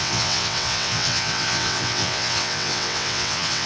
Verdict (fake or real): fake